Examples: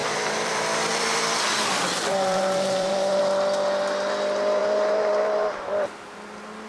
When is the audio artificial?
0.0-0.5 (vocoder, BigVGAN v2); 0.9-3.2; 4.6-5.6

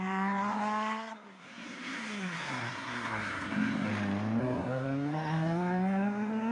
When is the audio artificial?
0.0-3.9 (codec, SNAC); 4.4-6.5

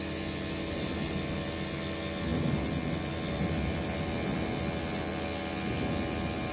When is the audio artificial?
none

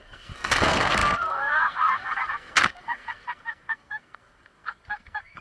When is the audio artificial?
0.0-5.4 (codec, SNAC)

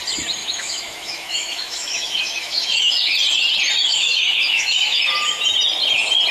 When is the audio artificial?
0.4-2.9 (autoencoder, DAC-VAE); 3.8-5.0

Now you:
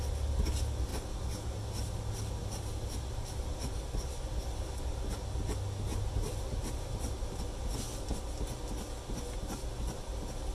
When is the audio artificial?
0.9-3.6 (vocoder, BigVGAN v2); 5.9-7.4